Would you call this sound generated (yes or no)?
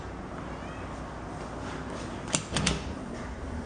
no